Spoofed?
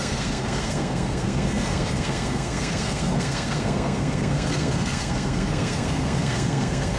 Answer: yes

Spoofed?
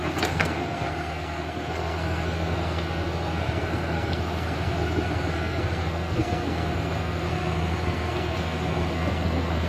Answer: yes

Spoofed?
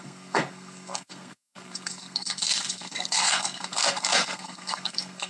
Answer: yes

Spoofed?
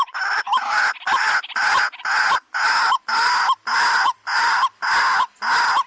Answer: no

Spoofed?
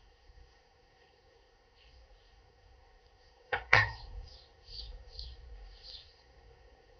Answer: yes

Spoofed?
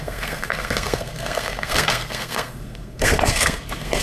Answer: yes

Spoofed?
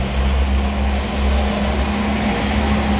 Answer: no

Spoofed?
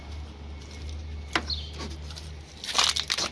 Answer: no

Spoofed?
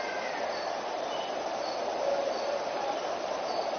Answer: no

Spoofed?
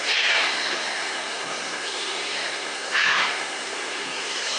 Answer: yes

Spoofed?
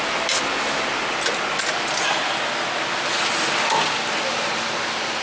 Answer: no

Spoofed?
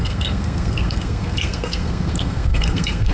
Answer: yes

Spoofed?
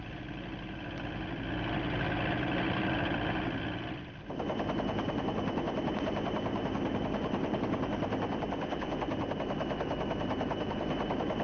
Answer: no